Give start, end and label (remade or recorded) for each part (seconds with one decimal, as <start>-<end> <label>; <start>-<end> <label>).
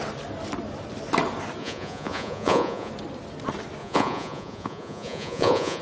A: 0.0-1.6 recorded; 1.6-2.9 remade; 2.9-3.8 recorded; 3.8-5.8 remade